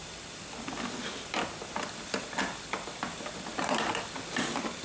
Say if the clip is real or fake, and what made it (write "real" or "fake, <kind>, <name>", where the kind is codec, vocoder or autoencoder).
real